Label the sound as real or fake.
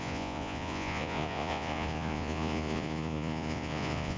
fake